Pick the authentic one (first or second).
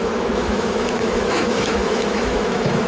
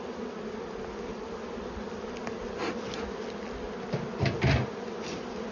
second